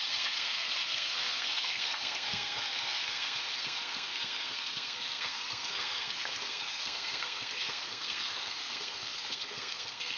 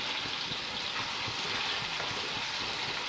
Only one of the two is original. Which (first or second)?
second